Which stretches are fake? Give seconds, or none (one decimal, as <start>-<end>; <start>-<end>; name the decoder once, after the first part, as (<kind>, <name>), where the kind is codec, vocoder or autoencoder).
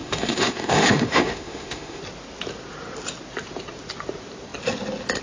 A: 0.0-2.0 (autoencoder, DAC-VAE)